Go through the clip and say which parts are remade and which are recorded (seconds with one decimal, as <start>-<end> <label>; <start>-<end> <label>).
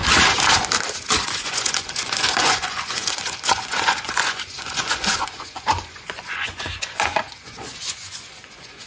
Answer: 0.0-1.1 recorded; 1.1-8.9 remade